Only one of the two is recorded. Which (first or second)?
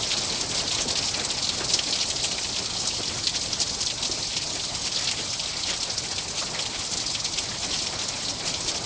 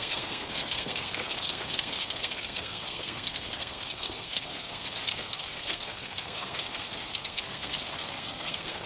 first